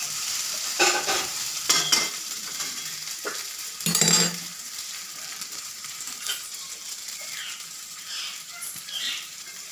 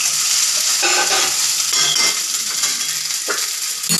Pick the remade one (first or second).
first